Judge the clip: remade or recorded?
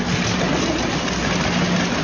recorded